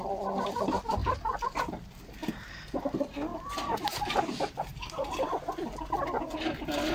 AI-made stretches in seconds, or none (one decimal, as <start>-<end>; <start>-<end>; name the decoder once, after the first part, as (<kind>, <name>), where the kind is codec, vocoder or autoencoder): none